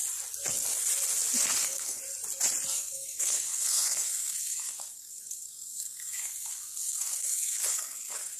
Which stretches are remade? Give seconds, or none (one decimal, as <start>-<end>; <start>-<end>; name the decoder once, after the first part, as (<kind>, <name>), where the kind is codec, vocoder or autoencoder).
1.6-2.0 (codec, SNAC); 2.7-8.4